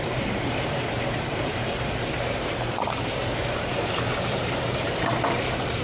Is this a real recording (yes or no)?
no